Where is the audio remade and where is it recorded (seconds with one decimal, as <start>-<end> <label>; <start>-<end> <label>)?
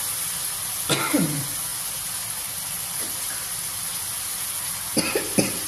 0.0-5.7 recorded